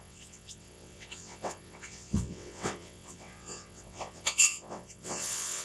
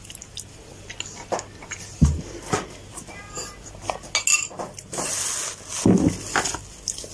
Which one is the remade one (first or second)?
first